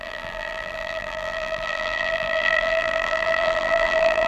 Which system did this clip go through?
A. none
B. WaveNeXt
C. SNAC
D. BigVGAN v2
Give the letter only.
D